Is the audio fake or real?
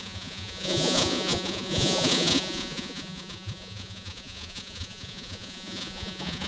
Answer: fake